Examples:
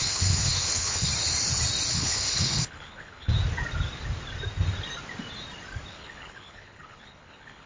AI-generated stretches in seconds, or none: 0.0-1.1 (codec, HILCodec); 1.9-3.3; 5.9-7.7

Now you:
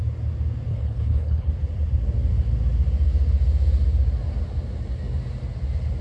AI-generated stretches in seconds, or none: 0.7-1.5 (codec, HILCodec)

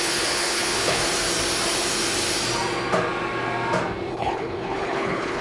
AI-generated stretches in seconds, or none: 0.0-1.0 (codec, HILCodec); 4.1-5.4